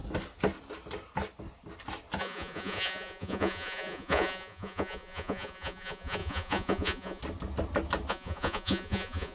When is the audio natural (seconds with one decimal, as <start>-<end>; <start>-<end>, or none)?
0.0-2.2; 7.2-8.1